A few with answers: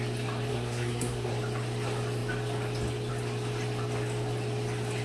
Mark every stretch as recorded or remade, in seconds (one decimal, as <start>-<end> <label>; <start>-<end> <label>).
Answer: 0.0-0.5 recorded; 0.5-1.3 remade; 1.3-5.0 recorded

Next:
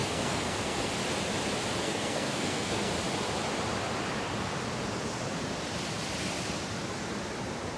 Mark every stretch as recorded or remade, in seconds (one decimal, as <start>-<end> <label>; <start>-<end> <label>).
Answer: 0.0-0.9 remade; 0.9-1.8 recorded; 1.8-2.9 remade; 2.9-7.8 recorded

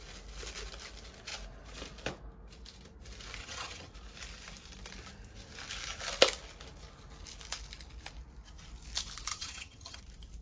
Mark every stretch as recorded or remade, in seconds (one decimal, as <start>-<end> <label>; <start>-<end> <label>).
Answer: 0.0-3.4 recorded; 3.4-3.9 remade; 3.9-9.3 recorded; 9.3-10.0 remade; 10.0-10.4 recorded